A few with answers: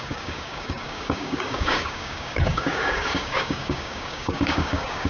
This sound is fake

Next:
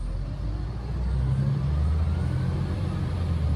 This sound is real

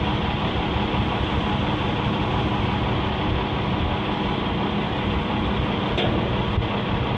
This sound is real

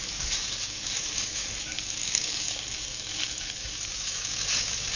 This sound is fake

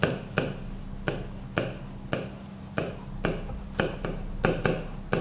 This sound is real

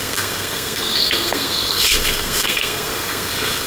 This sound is fake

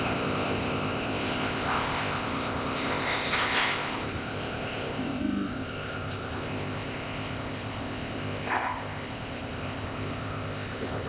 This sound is fake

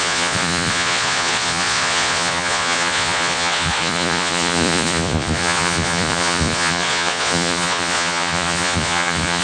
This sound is fake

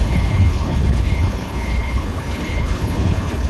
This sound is fake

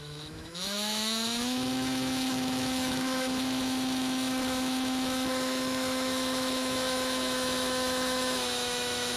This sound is fake